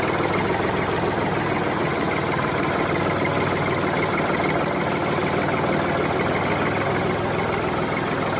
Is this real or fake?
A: real